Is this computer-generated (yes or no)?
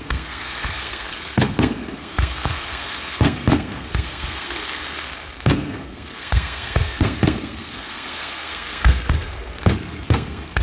yes